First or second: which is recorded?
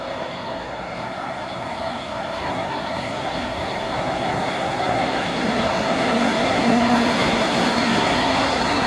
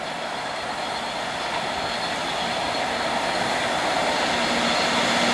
second